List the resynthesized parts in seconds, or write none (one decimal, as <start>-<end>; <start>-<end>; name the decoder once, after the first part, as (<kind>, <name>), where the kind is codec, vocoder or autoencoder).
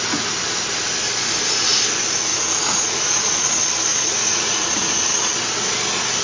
2.3-3.5 (vocoder, Vocos); 3.9-4.7